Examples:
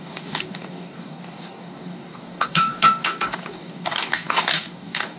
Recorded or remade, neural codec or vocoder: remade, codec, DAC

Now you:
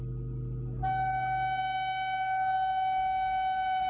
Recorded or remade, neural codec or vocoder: recorded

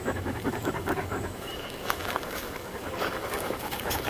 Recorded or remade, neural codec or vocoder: remade, codec, DAC